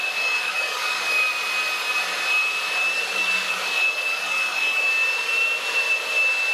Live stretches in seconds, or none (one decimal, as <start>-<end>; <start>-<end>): 1.3-3.1; 4.9-6.5